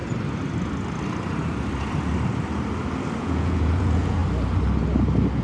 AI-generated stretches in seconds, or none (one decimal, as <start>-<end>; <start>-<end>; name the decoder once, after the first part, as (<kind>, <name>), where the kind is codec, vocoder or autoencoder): 3.2-4.2 (vocoder, Vocos)